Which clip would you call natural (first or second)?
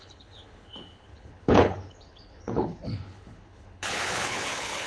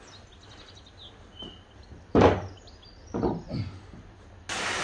second